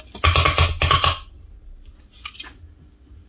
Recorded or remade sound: recorded